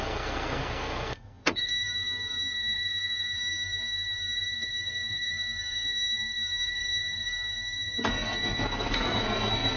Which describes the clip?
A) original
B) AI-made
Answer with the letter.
B